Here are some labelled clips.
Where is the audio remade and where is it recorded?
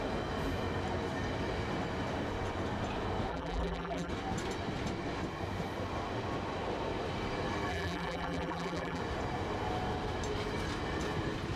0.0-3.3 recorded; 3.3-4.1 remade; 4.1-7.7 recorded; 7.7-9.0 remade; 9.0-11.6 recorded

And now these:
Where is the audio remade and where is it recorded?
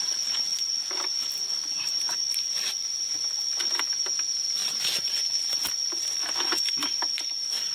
0.0-7.7 recorded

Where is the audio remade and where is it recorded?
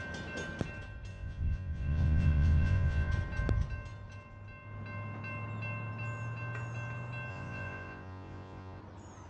0.0-1.1 recorded; 1.1-3.1 remade; 3.1-7.3 recorded; 7.3-8.8 remade; 8.8-9.3 recorded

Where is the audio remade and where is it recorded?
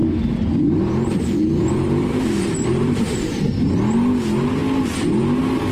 0.0-3.4 remade; 3.4-5.7 recorded